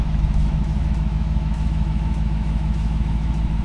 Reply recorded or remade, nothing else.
remade